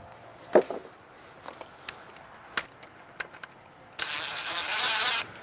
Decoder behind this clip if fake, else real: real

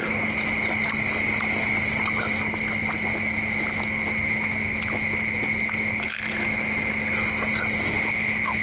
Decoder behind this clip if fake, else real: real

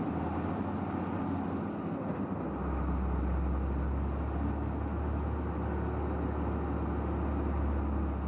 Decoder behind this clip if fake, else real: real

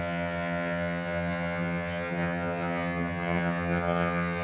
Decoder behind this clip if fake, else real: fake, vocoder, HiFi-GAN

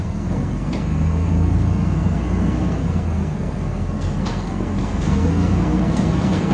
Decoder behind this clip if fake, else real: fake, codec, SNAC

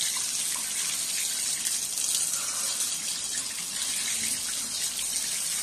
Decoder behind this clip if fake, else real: real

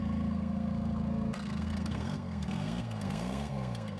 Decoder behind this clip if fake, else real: fake, codec, SNAC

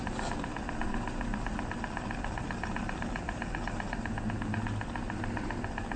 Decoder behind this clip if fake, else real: real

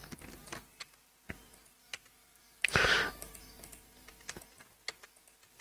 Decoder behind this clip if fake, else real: real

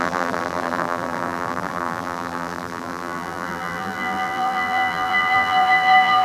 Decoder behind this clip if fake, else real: fake, vocoder, BigVGAN v2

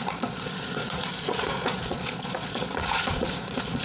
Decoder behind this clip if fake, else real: fake, vocoder, Vocos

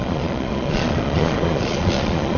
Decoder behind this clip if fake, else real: fake, vocoder, Vocos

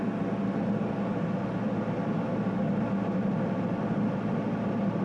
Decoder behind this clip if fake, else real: real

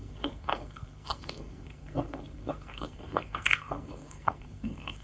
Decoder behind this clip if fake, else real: fake, codec, SNAC